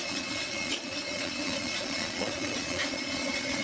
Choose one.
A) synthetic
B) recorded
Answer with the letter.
A